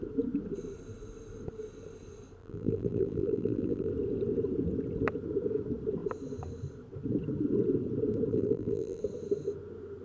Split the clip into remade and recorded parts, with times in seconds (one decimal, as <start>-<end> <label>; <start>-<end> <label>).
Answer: 0.0-2.4 recorded; 2.4-3.9 remade; 3.9-8.3 recorded; 8.3-9.0 remade; 9.0-10.0 recorded